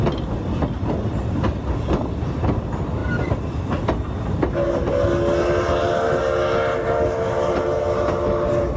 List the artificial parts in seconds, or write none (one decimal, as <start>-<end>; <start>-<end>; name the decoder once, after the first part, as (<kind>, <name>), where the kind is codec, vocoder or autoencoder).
none